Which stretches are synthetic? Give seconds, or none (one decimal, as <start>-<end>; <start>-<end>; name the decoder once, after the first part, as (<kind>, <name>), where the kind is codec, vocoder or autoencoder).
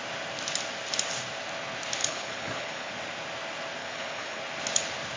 2.0-2.9 (codec, HILCodec); 3.8-4.4